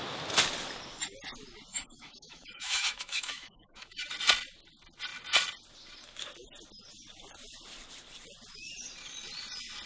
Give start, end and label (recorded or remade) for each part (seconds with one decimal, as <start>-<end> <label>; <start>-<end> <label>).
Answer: 0.0-1.7 recorded; 1.7-4.1 remade; 4.1-9.9 recorded